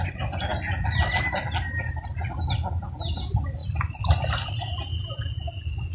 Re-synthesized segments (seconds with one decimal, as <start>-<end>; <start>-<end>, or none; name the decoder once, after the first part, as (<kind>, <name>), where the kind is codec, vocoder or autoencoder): none